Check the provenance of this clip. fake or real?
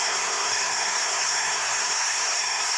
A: fake